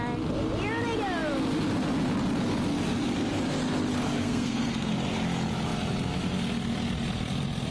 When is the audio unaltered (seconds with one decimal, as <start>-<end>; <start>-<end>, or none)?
0.0-4.2; 4.9-7.7